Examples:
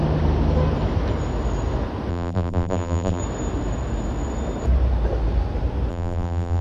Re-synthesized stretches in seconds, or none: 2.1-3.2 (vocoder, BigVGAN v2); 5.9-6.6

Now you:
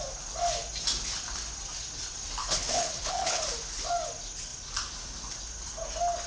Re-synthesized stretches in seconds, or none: 2.4-3.4 (codec, HILCodec)